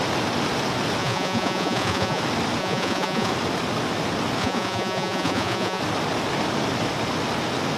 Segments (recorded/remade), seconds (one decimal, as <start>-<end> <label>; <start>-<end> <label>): 0.0-1.0 recorded; 1.0-2.2 remade; 2.2-2.6 recorded; 2.6-3.3 remade; 3.3-4.4 recorded; 4.4-5.8 remade; 5.8-7.8 recorded

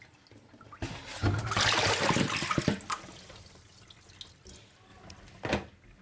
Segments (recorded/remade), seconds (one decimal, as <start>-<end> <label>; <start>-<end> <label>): 0.0-6.0 recorded

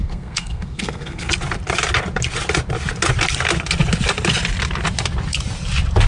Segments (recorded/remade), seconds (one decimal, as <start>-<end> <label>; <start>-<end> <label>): 0.0-1.3 remade; 1.3-6.1 recorded

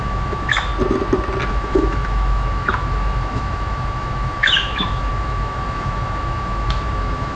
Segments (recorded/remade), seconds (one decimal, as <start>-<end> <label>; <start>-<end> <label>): 0.0-0.7 remade; 0.7-1.5 recorded; 1.5-7.4 remade

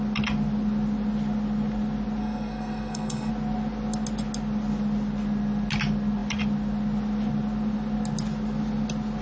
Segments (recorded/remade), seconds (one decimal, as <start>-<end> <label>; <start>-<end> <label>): 0.0-2.2 recorded; 2.2-3.3 remade; 3.3-9.2 recorded

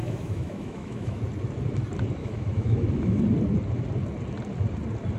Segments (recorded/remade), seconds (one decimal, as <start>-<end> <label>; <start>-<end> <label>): 0.0-1.2 remade; 1.2-2.2 recorded; 2.2-3.2 remade; 3.2-5.2 recorded

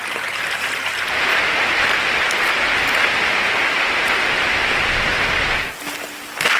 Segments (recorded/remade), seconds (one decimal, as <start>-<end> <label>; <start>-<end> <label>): 0.0-6.6 recorded

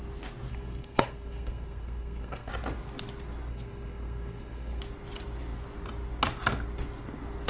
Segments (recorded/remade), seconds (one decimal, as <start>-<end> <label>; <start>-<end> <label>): 0.0-0.5 recorded; 0.5-2.5 remade; 2.5-3.5 recorded; 3.5-4.8 remade; 4.8-7.5 recorded